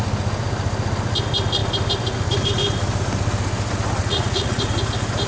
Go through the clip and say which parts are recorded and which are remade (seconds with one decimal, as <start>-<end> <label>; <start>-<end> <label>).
0.0-4.0 recorded; 4.0-4.6 remade; 4.6-5.3 recorded